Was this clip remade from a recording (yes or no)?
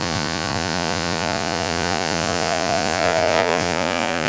yes